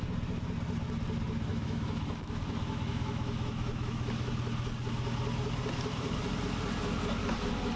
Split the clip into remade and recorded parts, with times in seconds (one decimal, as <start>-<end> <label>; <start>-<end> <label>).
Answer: 0.0-1.5 recorded; 1.5-4.3 remade; 4.3-7.8 recorded